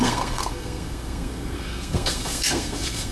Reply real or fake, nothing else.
fake